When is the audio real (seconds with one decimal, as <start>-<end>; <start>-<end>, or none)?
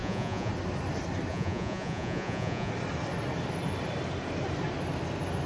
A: 0.5-1.3; 2.7-5.5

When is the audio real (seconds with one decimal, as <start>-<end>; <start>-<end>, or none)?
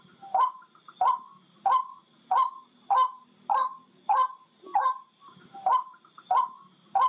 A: 0.0-7.1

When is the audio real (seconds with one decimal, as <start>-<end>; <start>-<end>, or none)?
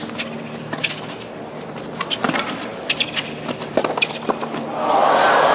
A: 0.0-5.5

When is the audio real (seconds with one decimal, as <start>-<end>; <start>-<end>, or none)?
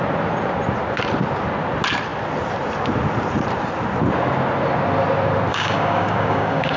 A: 0.0-5.5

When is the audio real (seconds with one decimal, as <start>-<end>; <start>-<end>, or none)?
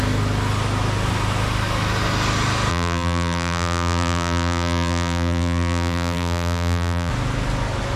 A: 0.0-2.7; 7.1-8.0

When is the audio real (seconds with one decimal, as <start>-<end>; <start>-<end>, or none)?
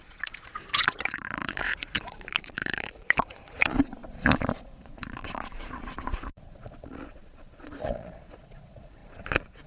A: none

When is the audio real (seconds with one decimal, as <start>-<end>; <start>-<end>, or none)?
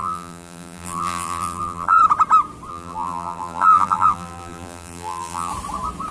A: 2.0-2.7; 5.5-6.1